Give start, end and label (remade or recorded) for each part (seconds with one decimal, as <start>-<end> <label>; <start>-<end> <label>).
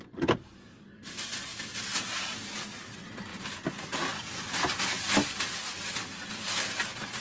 0.0-7.2 recorded